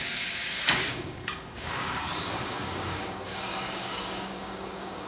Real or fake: fake